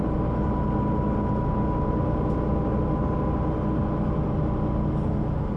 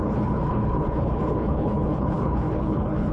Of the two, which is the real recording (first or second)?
first